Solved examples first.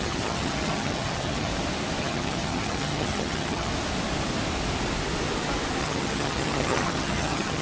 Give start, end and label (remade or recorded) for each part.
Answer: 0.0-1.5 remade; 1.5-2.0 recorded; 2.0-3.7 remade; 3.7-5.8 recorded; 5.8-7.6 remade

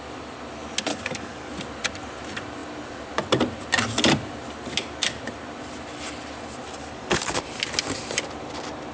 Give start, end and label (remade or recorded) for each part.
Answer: 0.0-0.9 recorded; 0.9-1.5 remade; 1.5-6.8 recorded; 6.8-7.4 remade; 7.4-8.9 recorded

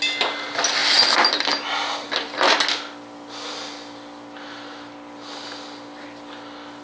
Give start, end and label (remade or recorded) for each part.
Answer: 0.0-6.8 recorded

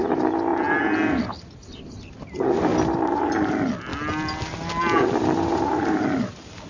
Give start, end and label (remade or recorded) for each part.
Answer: 0.0-2.7 recorded; 2.7-3.3 remade; 3.3-5.5 recorded; 5.5-6.0 remade; 6.0-6.7 recorded

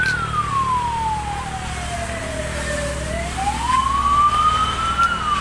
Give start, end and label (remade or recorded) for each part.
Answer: 0.0-5.4 recorded